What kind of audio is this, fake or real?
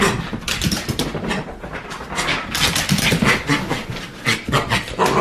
real